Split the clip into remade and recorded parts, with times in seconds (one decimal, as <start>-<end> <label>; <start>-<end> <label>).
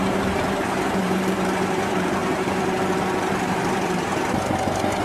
0.0-4.1 remade; 4.1-5.0 recorded